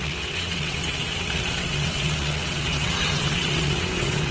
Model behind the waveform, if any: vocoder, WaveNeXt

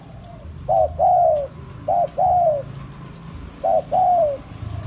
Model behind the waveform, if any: none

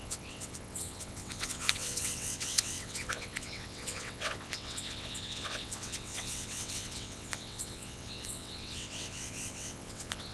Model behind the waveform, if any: vocoder, WaveNeXt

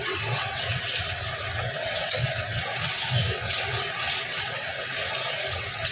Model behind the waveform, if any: vocoder, WaveNeXt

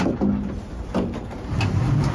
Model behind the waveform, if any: none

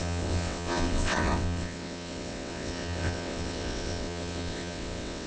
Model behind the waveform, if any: vocoder, WaveNeXt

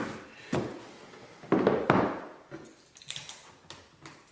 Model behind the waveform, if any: none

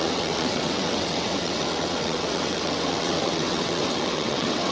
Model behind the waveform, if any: vocoder, WaveNeXt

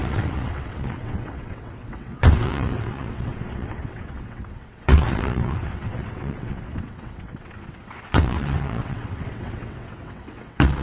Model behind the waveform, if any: vocoder, WaveNeXt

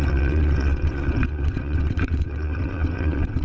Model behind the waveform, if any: vocoder, WaveNeXt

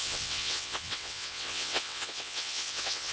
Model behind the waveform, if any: vocoder, WaveNeXt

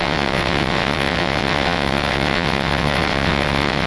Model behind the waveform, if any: vocoder, WaveNeXt